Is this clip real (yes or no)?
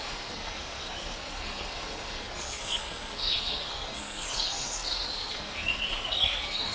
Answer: no